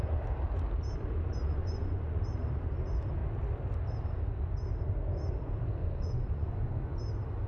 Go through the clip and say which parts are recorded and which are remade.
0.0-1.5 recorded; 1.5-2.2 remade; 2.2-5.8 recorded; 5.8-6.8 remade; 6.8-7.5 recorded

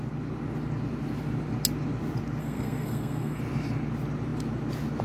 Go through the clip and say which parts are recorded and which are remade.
0.0-2.4 recorded; 2.4-3.4 remade; 3.4-5.0 recorded

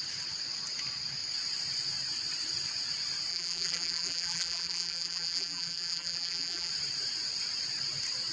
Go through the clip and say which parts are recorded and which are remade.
0.0-3.3 recorded; 3.3-6.7 remade; 6.7-8.3 recorded

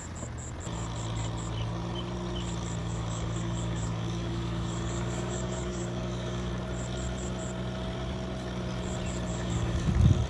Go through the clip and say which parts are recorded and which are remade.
0.0-2.8 recorded; 2.8-6.5 remade; 6.5-9.3 recorded; 9.3-9.9 remade; 9.9-10.3 recorded

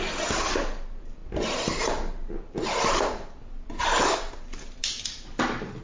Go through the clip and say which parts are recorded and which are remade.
0.0-5.8 recorded

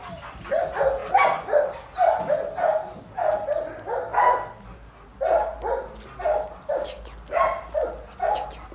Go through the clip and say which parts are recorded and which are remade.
0.0-8.7 recorded

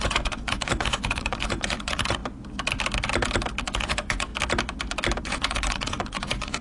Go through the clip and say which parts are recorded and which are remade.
0.0-2.2 remade; 2.2-3.6 recorded; 3.6-4.3 remade; 4.3-5.2 recorded; 5.2-6.6 remade